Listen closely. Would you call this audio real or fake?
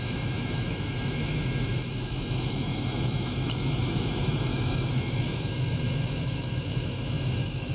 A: fake